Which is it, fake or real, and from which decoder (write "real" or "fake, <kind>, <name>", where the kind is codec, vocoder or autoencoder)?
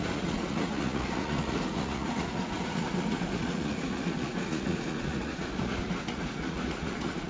fake, vocoder, Vocos